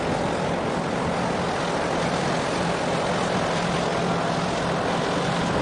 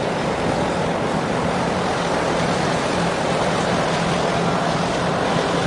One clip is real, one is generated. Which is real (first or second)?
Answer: first